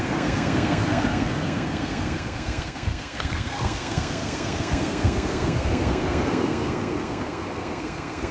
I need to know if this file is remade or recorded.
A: remade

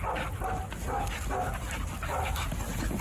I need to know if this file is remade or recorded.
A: recorded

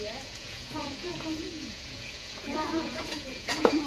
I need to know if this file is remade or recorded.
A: remade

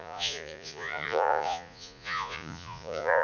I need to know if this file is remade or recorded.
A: remade